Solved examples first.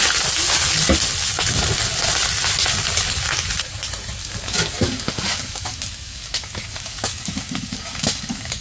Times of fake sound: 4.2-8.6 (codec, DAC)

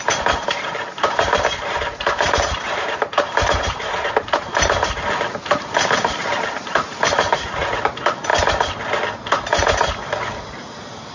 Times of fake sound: 0.0-8.3 (vocoder, BigVGAN v2); 9.5-11.1